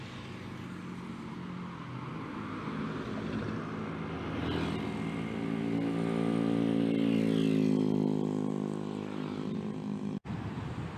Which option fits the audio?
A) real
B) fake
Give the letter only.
A